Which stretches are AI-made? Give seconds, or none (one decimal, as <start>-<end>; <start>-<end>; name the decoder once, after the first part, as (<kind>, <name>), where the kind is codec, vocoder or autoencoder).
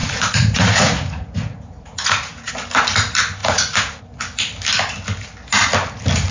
0.0-2.5 (vocoder, Vocos); 3.4-4.0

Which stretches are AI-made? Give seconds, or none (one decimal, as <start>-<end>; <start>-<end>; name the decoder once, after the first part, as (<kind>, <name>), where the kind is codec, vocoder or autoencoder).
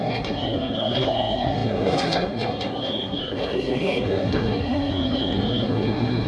0.0-6.3 (codec, SNAC)